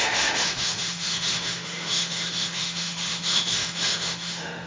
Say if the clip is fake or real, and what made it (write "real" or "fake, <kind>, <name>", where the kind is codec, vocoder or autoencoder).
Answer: fake, autoencoder, DAC-VAE